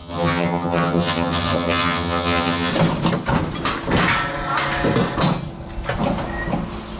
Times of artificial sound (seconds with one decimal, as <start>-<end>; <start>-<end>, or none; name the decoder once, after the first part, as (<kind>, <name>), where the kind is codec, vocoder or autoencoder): 0.0-2.7 (vocoder, HiFi-GAN)